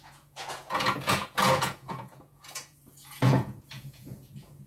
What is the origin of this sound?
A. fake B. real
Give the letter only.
A